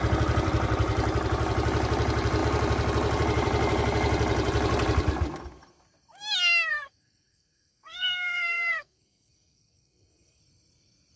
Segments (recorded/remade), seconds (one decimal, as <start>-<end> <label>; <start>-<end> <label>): 0.0-6.7 recorded; 6.7-10.4 remade; 10.4-11.2 recorded